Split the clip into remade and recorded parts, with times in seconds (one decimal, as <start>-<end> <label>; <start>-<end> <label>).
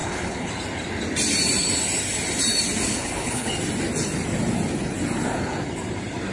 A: 0.0-0.5 remade; 0.5-2.9 recorded; 2.9-3.5 remade; 3.5-6.3 recorded